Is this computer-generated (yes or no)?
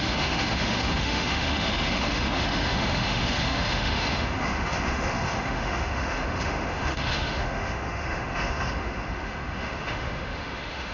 yes